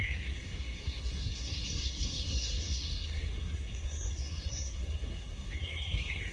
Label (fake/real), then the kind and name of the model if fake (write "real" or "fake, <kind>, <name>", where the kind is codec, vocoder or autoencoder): fake, codec, SNAC